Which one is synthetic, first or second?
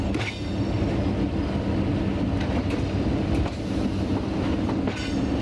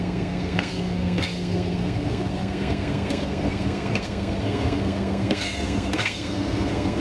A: second